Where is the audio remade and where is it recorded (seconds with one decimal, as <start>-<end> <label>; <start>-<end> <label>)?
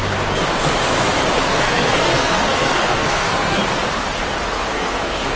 0.0-1.5 recorded; 1.5-3.6 remade; 3.6-4.6 recorded; 4.6-5.4 remade